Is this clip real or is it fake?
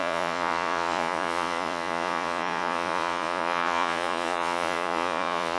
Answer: fake